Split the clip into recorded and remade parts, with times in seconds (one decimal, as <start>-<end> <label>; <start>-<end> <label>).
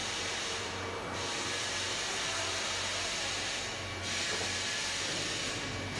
0.0-1.1 remade; 1.1-6.0 recorded